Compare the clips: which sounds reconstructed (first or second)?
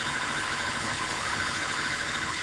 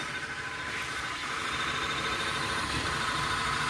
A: first